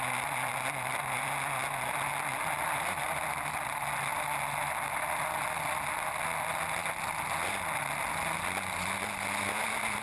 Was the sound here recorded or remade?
recorded